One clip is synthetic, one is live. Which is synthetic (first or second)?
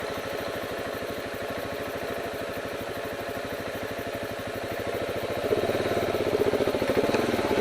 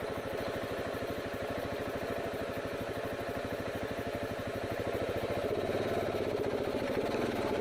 second